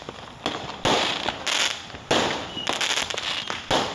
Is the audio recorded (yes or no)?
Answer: yes